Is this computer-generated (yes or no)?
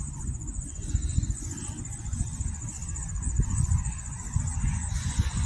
yes